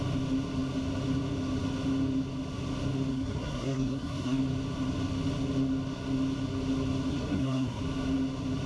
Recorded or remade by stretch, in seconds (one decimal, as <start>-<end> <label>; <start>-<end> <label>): 0.0-3.1 recorded; 3.1-4.4 remade; 4.4-7.1 recorded; 7.1-7.8 remade; 7.8-8.7 recorded